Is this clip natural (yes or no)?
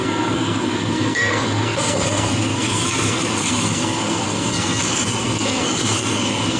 no